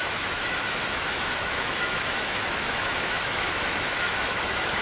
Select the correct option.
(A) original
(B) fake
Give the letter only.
B